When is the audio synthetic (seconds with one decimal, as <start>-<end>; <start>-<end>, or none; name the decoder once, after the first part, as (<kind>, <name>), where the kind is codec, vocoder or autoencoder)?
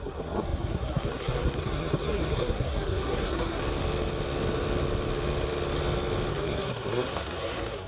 0.0-3.6 (codec, SNAC); 6.3-7.9